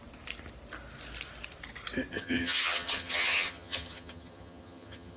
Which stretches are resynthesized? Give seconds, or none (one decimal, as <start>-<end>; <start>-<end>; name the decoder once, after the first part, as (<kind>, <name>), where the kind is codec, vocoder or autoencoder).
2.1-5.2 (vocoder, HiFi-GAN)